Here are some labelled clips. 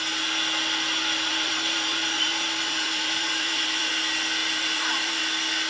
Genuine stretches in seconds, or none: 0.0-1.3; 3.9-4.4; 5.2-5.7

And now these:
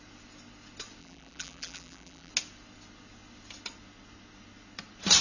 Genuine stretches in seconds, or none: 0.0-1.0; 2.3-5.2

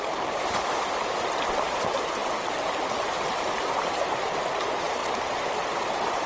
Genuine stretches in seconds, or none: 2.2-3.8; 5.0-5.8

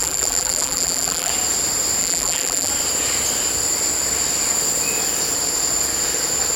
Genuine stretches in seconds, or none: 1.3-2.0; 2.7-6.6

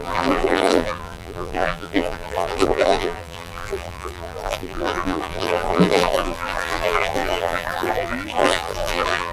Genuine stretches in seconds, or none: none

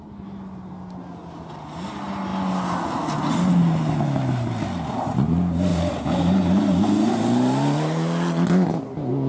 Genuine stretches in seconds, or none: 0.0-5.7; 7.1-9.3

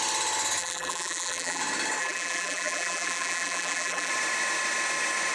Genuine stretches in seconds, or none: 0.0-0.6; 1.6-2.0; 4.1-5.3